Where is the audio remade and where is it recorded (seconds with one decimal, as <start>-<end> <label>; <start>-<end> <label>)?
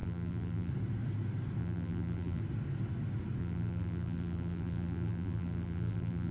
0.0-0.7 remade; 0.7-1.6 recorded; 1.6-2.4 remade; 2.4-3.4 recorded; 3.4-6.3 remade